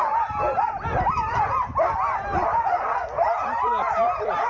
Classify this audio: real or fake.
real